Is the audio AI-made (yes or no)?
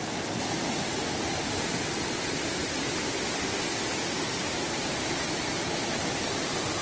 no